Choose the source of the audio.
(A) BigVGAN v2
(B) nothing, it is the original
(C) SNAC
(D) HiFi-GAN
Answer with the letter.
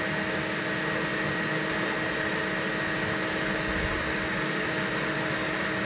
B